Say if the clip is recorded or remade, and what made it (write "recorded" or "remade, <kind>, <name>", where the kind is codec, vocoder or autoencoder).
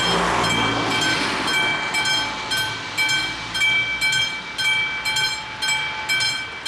recorded